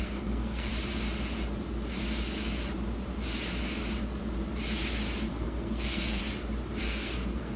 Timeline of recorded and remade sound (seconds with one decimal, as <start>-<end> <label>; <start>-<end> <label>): 0.0-0.7 remade; 0.7-5.3 recorded; 5.3-6.2 remade; 6.2-6.8 recorded; 6.8-7.6 remade